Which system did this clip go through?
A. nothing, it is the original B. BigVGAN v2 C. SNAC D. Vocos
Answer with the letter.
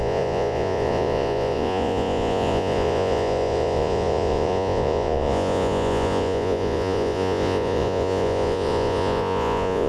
D